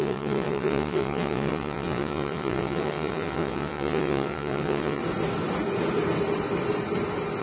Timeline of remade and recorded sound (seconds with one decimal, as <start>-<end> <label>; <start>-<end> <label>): 0.0-5.0 remade; 5.0-7.4 recorded